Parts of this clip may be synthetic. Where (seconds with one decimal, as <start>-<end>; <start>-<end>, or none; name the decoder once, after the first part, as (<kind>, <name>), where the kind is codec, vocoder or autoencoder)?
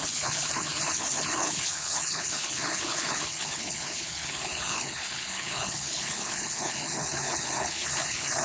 0.0-8.4 (codec, HILCodec)